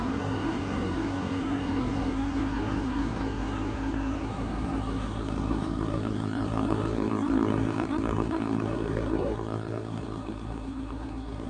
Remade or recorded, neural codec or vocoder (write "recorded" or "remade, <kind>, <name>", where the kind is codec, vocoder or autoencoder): remade, codec, SNAC